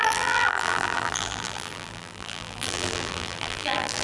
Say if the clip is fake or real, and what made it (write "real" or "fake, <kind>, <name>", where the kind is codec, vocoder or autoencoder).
fake, vocoder, BigVGAN v2